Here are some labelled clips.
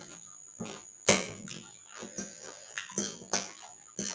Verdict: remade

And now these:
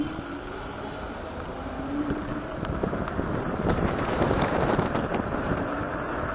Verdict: remade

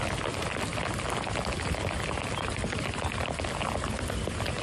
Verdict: recorded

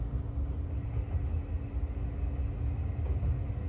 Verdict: recorded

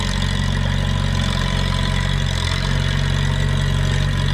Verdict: recorded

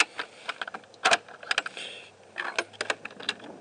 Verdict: recorded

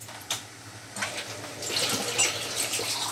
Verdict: recorded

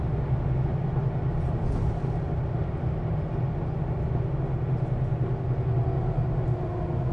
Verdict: recorded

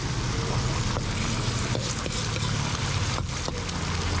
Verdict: recorded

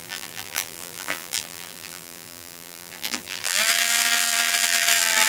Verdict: remade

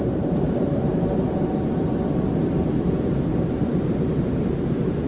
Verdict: remade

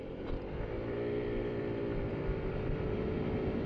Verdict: remade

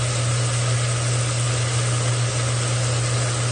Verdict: recorded